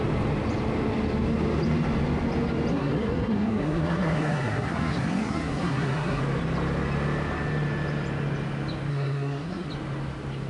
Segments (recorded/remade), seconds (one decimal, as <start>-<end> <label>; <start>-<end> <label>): 0.0-2.7 recorded; 2.7-6.2 remade; 6.2-8.9 recorded; 8.9-9.7 remade; 9.7-10.5 recorded